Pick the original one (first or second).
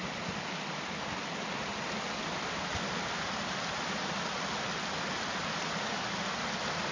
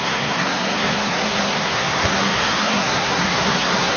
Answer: first